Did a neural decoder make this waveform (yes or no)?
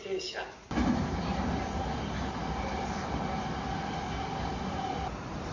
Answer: no